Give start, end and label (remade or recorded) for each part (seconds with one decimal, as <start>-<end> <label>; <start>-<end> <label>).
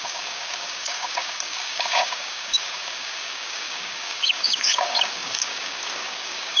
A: 0.0-6.6 remade